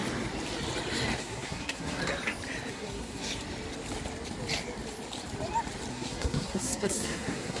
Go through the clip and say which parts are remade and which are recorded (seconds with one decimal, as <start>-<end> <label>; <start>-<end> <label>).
0.0-1.2 recorded; 1.2-2.0 remade; 2.0-2.7 recorded; 2.7-3.3 remade; 3.3-5.9 recorded; 5.9-7.6 remade